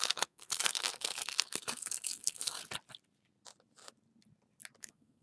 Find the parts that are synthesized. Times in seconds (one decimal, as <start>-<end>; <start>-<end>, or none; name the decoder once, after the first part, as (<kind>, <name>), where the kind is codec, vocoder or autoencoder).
0.0-2.6 (codec, SNAC); 4.8-5.2